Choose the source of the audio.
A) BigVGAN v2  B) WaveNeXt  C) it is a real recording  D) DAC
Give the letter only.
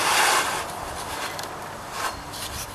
A